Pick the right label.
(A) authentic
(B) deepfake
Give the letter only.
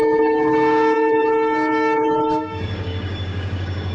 B